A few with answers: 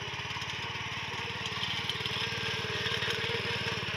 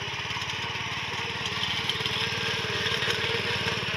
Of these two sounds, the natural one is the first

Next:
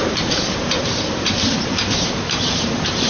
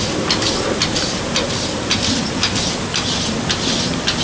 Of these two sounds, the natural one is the second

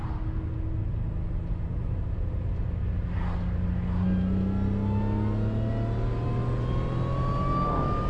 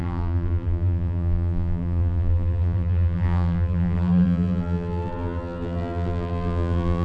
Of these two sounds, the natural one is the first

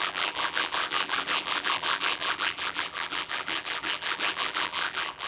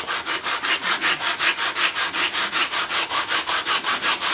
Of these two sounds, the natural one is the second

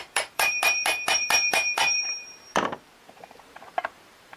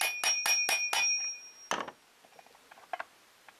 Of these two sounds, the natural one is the second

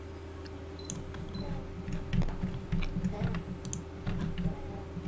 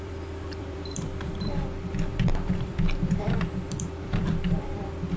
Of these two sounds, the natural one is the first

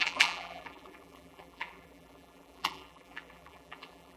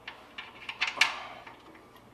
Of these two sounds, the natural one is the second